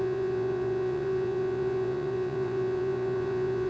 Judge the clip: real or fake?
fake